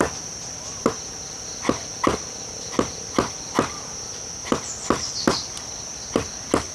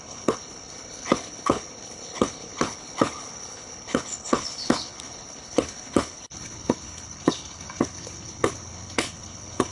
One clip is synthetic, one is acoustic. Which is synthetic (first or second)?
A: second